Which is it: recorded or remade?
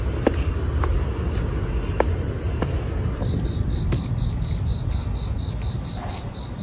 recorded